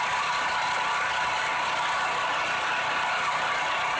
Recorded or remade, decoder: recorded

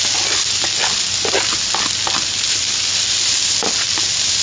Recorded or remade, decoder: recorded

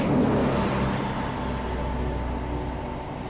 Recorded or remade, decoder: recorded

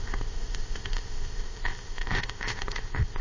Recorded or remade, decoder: remade, codec, ZipCodec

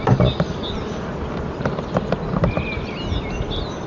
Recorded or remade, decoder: recorded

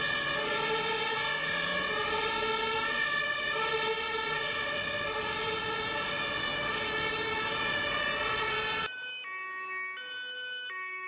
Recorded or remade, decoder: recorded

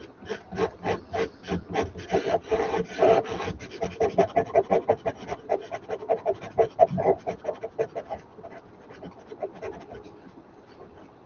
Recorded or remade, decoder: recorded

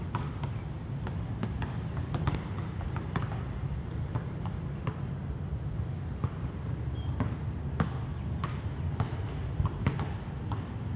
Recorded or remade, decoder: recorded